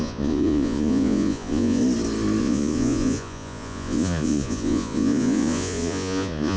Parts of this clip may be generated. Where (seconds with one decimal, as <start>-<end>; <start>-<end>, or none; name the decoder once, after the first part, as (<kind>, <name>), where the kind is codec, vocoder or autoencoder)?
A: 0.0-1.8 (vocoder, Vocos); 2.4-6.6